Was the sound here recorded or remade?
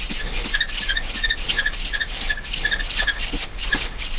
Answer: recorded